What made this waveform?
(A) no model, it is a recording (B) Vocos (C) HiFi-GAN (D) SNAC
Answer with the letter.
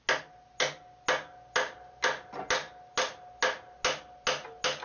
A